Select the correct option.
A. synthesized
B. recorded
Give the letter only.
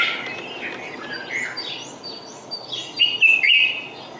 B